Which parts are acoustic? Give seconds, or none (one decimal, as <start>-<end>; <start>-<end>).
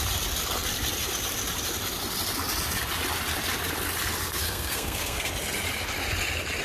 0.0-4.2; 5.3-6.6